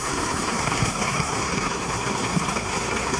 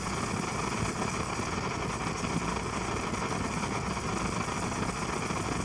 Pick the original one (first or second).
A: second